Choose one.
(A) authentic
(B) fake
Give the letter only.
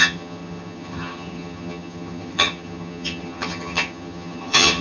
B